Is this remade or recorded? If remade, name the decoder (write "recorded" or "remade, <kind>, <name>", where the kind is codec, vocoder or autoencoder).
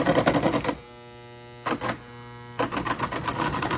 recorded